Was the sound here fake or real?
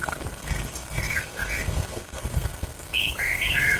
fake